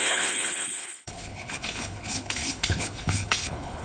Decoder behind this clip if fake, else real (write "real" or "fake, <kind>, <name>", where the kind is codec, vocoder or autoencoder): fake, codec, HILCodec